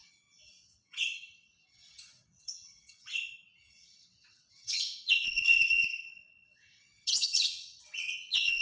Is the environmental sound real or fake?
fake